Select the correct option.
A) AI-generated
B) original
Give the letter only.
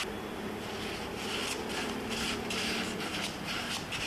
B